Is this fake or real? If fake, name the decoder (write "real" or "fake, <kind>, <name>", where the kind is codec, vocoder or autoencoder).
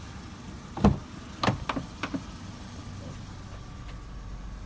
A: real